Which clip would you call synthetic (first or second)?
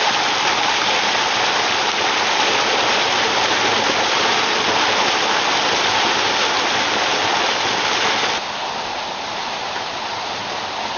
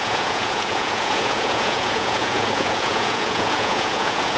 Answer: second